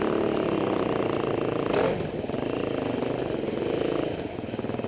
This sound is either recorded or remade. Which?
recorded